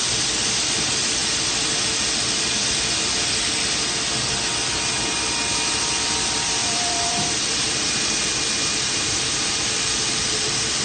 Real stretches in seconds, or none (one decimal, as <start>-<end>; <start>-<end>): 0.0-6.6; 10.1-10.8

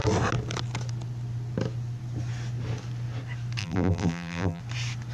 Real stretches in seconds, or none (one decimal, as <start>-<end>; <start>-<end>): 0.0-3.6; 4.6-5.1

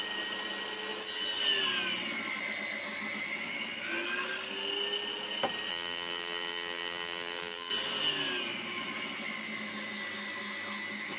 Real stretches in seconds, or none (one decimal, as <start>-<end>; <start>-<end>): 0.0-5.7; 7.7-11.2